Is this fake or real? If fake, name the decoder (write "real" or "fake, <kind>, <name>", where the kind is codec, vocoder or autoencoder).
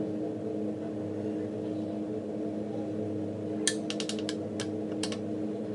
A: real